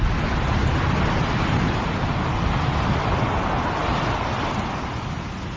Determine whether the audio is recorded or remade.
recorded